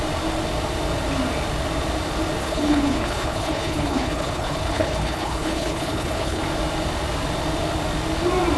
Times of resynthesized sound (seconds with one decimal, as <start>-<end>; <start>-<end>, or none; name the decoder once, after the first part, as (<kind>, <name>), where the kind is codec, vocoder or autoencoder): 2.4-6.4 (codec, HILCodec)